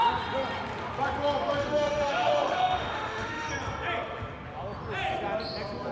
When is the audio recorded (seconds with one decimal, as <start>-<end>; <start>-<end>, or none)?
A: 0.0-1.6; 3.5-5.9